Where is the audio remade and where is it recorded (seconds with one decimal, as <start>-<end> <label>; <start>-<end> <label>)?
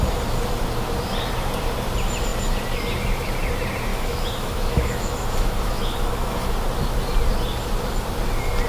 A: 0.0-3.9 recorded; 3.9-6.5 remade; 6.5-8.7 recorded